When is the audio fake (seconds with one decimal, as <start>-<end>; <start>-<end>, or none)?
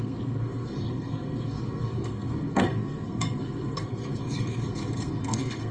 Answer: 0.0-5.7